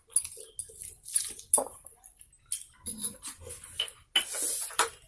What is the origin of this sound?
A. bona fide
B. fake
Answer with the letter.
A